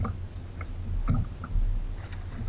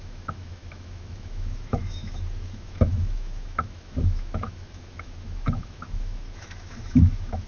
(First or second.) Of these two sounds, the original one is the first